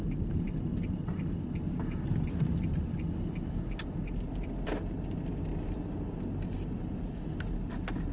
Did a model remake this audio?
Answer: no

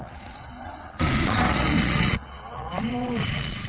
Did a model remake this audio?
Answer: yes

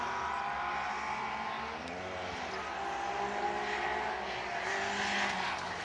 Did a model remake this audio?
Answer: no